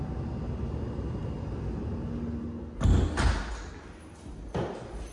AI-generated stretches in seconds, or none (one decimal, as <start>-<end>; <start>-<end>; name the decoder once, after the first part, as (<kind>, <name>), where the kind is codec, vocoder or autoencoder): none